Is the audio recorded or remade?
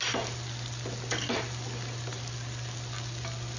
recorded